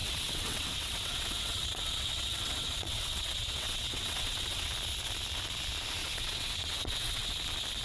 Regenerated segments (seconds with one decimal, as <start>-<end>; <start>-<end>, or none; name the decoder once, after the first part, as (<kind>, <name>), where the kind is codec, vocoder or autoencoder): 0.0-4.7 (vocoder, WaveNeXt); 6.0-7.3

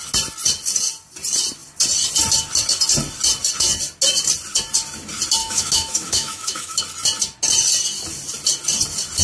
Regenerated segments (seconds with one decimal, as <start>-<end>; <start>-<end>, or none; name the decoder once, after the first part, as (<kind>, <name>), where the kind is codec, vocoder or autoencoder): 5.4-6.8 (autoencoder, DAC-VAE)

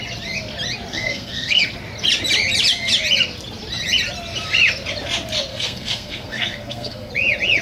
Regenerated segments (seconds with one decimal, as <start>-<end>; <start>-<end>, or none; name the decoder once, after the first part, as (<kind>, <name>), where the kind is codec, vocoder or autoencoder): 0.9-1.6 (codec, SNAC); 5.5-7.1